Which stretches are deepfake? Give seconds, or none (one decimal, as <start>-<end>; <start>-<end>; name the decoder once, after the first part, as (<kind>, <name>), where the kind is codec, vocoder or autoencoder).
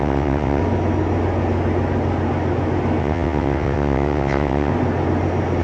0.0-0.6 (vocoder, WaveNeXt); 3.0-4.7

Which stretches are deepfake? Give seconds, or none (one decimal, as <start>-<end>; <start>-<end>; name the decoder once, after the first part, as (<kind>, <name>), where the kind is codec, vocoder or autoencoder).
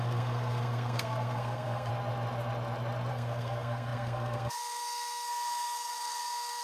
0.0-1.9 (codec, SNAC); 3.1-6.6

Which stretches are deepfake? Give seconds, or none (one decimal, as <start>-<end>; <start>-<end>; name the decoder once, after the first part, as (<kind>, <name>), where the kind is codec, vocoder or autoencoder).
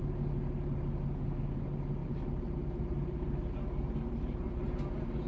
none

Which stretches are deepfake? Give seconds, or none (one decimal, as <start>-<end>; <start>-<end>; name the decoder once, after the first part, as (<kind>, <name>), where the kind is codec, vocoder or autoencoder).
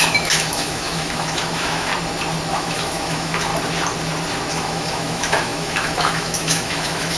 0.0-1.9 (autoencoder, DAC-VAE); 2.5-3.5; 4.5-7.2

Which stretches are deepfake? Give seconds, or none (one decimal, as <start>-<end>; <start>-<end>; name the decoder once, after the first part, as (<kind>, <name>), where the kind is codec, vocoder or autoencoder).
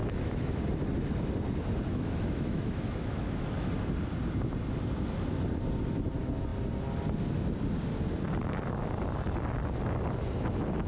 0.0-0.7 (autoencoder, DAC-VAE); 1.9-3.7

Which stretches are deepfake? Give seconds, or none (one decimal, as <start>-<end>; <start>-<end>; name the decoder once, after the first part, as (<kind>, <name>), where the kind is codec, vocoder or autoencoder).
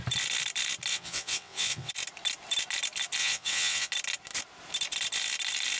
0.9-1.9 (vocoder, WaveNeXt); 3.2-3.9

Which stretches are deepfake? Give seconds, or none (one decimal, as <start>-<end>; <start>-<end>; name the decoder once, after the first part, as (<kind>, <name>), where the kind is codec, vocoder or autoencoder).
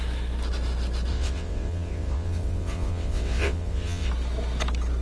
1.1-4.1 (vocoder, WaveNeXt)